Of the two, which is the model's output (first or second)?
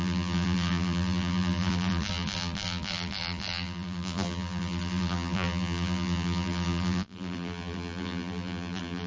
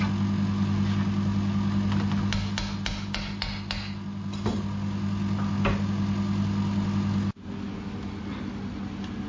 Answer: first